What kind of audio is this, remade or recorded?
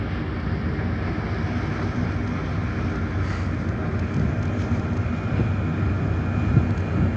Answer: recorded